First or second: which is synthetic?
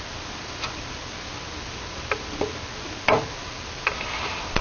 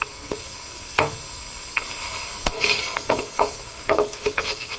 second